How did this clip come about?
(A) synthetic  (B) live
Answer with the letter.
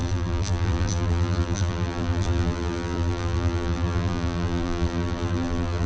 A